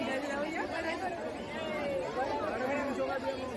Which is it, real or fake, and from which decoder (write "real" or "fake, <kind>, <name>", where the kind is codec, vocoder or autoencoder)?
real